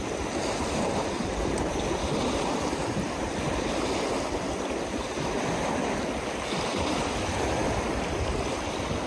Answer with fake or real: real